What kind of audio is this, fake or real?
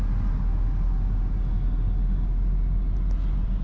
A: real